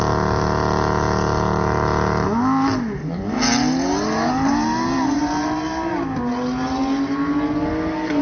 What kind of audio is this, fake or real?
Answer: real